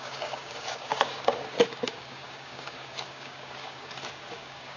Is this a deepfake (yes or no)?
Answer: yes